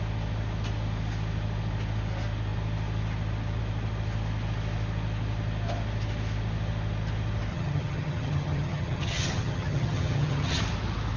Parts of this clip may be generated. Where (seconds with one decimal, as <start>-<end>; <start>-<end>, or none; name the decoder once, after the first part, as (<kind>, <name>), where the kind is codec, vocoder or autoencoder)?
7.5-10.6 (vocoder, HiFi-GAN)